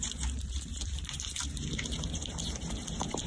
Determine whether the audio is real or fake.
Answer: fake